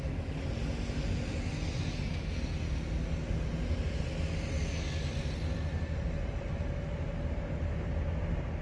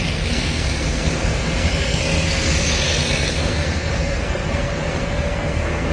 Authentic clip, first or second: first